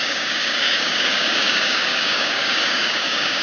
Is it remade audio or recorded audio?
remade